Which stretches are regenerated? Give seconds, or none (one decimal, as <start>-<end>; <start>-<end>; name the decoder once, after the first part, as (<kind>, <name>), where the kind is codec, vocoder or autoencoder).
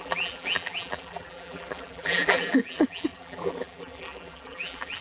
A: 0.0-5.0 (vocoder, BigVGAN v2)